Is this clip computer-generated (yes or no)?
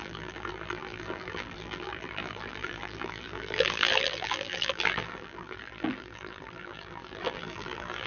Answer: yes